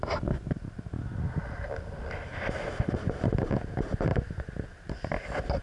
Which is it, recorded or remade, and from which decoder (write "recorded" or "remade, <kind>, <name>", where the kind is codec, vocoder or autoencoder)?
recorded